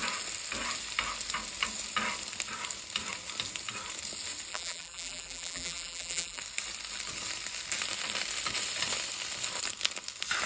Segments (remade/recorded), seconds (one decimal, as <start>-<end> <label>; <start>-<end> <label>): 0.0-4.5 recorded; 4.5-6.4 remade; 6.4-10.5 recorded

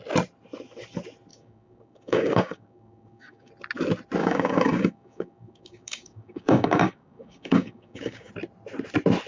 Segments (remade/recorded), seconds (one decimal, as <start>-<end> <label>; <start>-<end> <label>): 0.0-1.3 recorded; 1.3-3.5 remade; 3.5-4.2 recorded; 4.2-8.3 remade; 8.3-9.3 recorded

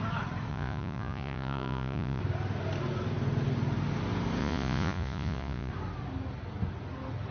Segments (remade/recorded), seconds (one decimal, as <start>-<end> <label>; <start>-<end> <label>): 0.0-0.5 recorded; 0.5-2.2 remade; 2.2-4.4 recorded; 4.4-5.7 remade; 5.7-7.3 recorded

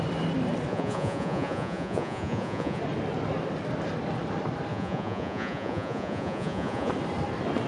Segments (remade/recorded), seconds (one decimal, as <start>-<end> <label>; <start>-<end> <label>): 0.0-0.7 recorded; 0.7-2.8 remade; 2.8-4.7 recorded; 4.7-6.9 remade; 6.9-7.7 recorded

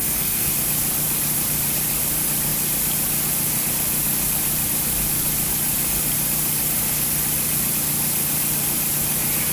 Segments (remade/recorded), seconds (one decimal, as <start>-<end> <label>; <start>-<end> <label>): 0.0-0.5 remade; 0.5-9.5 recorded

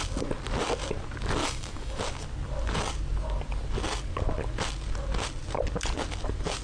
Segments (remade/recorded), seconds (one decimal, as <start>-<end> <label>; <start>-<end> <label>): 0.0-1.4 recorded; 1.4-2.0 remade; 2.0-6.6 recorded

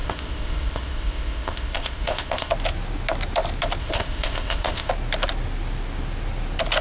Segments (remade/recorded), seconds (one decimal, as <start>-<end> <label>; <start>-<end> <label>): 0.0-2.5 remade; 2.5-3.8 recorded; 3.8-4.9 remade; 4.9-6.8 recorded